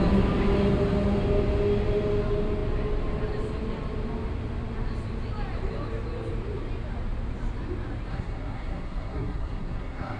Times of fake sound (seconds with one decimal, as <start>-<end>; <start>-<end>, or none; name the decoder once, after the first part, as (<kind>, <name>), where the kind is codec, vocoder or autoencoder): 8.1-10.2 (codec, SNAC)